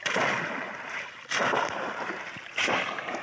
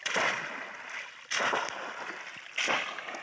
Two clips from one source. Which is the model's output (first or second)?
first